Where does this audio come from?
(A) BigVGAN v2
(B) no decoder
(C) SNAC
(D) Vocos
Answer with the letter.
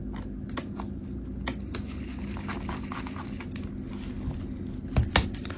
B